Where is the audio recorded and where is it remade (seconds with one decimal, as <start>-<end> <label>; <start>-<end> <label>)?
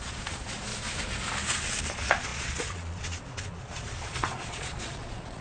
0.0-0.7 remade; 0.7-1.9 recorded; 1.9-5.4 remade